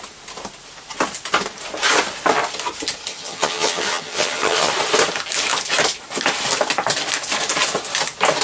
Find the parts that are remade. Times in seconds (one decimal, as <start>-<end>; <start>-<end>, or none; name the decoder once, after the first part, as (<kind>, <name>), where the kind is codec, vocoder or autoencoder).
3.1-4.7 (vocoder, HiFi-GAN)